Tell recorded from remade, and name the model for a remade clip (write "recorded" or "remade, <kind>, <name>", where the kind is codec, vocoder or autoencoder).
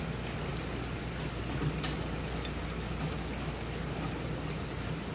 recorded